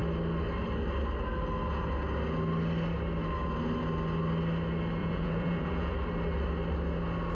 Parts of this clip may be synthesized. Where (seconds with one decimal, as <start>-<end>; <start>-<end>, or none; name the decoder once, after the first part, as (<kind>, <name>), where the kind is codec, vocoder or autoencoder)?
5.0-5.9 (vocoder, Vocos)

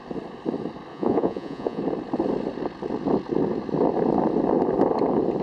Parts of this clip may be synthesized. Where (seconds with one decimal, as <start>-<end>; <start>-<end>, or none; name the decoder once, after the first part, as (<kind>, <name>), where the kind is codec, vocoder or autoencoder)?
0.9-1.8 (vocoder, Vocos)

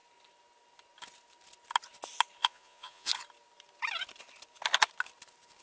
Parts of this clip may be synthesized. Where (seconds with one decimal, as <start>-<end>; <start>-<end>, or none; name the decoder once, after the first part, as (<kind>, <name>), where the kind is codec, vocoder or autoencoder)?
2.4-3.1 (vocoder, Vocos)

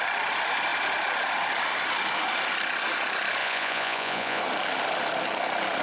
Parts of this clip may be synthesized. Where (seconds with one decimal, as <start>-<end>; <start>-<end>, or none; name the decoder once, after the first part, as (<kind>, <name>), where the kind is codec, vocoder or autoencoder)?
3.4-4.4 (vocoder, Vocos)